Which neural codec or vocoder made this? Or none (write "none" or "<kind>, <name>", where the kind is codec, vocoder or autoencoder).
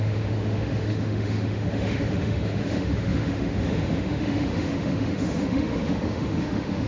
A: autoencoder, DAC-VAE